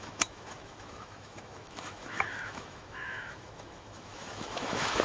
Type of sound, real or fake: fake